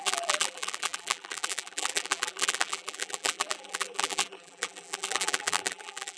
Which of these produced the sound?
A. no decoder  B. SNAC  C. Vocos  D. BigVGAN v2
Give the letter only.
D